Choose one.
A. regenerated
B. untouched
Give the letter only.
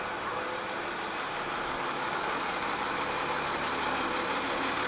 B